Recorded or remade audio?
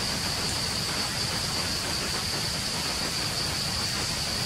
recorded